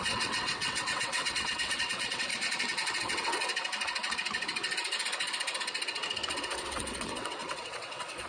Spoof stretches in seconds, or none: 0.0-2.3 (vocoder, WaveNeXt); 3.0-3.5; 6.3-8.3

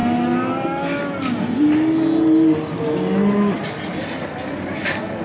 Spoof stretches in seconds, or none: none

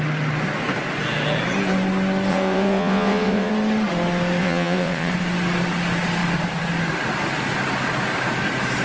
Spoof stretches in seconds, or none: 2.3-3.5 (vocoder, WaveNeXt); 4.4-5.1